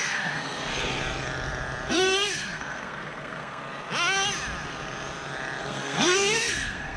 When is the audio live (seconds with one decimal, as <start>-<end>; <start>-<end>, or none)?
0.7-1.9; 3.6-5.6